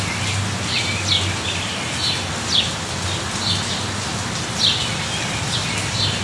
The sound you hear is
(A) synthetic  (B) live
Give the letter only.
B